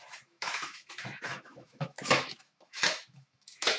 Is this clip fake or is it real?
fake